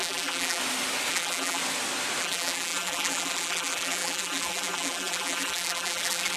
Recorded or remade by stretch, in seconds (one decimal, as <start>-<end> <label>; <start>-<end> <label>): 0.0-0.6 remade; 0.6-1.1 recorded; 1.1-1.6 remade; 1.6-2.2 recorded; 2.2-6.4 remade